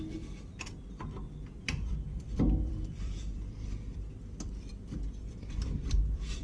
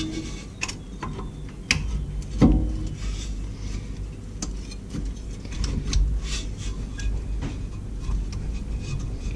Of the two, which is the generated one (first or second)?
first